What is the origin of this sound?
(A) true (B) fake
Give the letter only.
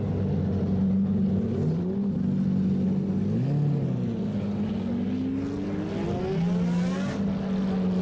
A